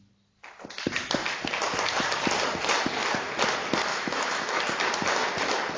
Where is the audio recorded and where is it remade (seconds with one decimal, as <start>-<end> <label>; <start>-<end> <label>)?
0.0-3.9 recorded; 3.9-4.6 remade; 4.6-5.8 recorded